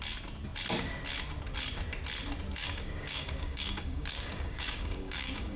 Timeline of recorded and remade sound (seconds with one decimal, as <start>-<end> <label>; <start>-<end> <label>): 0.0-2.6 recorded; 2.6-5.6 remade